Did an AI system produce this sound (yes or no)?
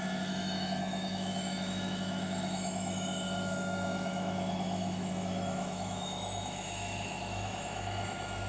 yes